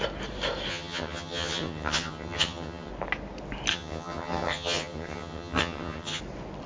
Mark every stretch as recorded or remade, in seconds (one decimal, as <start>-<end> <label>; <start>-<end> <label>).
0.0-0.7 recorded; 0.7-2.9 remade; 2.9-3.7 recorded; 3.7-6.2 remade; 6.2-6.7 recorded